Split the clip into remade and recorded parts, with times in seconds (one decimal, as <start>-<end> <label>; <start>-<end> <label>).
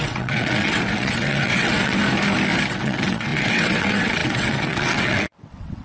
0.0-2.0 remade; 2.0-2.7 recorded; 2.7-5.8 remade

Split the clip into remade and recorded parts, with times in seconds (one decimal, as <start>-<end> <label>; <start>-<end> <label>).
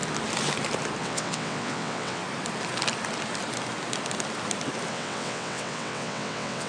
0.0-1.0 recorded; 1.0-2.2 remade; 2.2-4.9 recorded; 4.9-6.7 remade